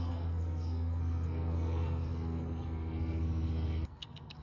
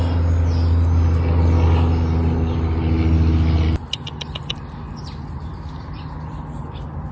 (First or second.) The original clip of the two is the second